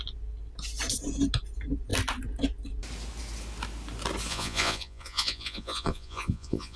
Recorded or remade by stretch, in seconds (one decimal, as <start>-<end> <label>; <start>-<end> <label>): 0.0-4.3 recorded; 4.3-6.8 remade

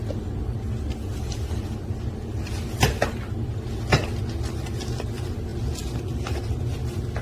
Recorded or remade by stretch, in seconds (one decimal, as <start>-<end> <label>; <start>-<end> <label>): 0.0-5.5 recorded; 5.5-6.0 remade; 6.0-7.2 recorded

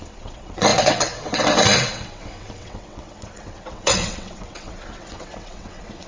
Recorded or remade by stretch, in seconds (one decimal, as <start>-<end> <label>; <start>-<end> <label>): 0.0-6.1 remade